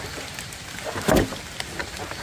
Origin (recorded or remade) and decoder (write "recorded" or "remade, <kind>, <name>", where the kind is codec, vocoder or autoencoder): recorded